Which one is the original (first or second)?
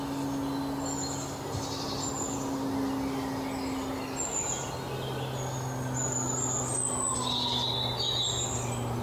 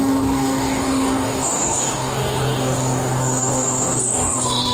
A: first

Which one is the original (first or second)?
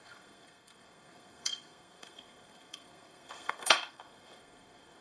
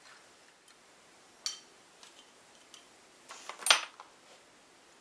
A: second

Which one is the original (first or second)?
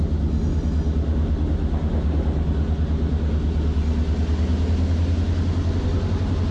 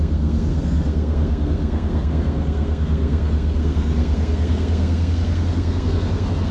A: first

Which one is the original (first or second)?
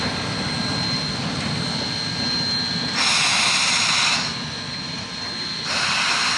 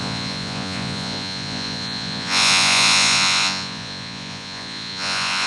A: first